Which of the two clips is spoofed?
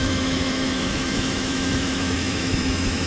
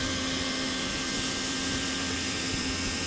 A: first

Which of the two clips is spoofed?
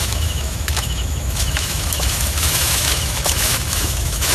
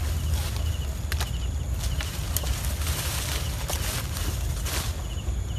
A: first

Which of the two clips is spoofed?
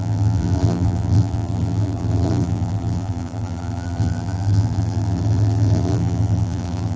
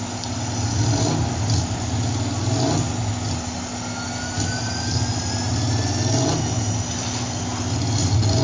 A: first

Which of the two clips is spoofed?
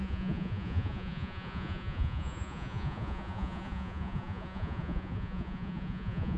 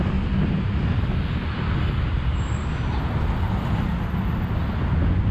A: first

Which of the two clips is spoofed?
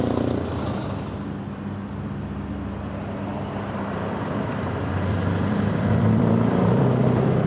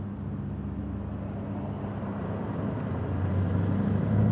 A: first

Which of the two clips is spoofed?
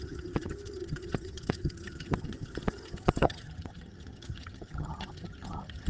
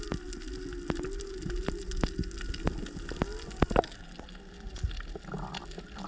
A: first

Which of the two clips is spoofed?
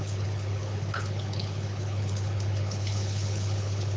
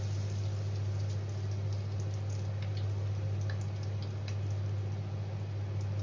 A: first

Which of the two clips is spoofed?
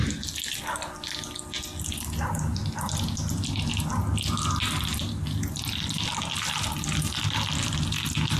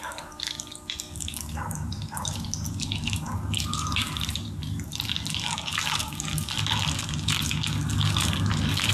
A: second